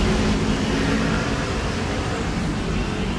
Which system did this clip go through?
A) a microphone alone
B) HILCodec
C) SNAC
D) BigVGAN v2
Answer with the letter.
A